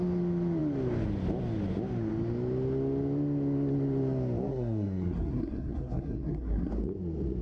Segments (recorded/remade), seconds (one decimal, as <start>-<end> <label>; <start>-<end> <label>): 0.0-4.5 recorded; 4.5-6.7 remade; 6.7-7.4 recorded